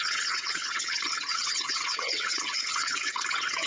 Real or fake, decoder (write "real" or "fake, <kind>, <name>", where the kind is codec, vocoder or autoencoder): fake, vocoder, WaveNeXt